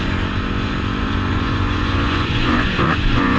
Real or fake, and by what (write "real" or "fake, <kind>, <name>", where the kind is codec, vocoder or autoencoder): fake, vocoder, Vocos